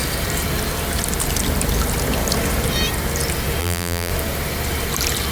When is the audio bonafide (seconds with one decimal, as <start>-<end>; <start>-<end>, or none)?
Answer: 0.0-3.6; 4.1-5.3

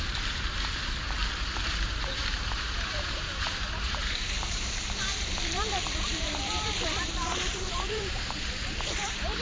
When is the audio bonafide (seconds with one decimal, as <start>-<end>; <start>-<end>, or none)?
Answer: 1.2-1.7